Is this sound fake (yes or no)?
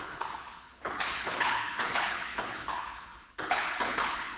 yes